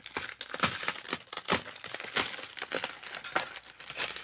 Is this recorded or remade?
recorded